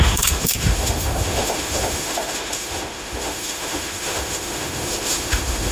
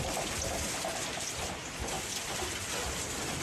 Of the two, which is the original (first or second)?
second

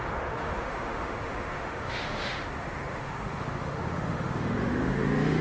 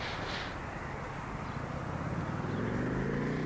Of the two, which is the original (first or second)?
second